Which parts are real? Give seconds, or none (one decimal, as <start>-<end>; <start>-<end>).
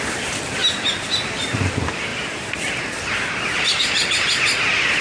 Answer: 0.0-5.0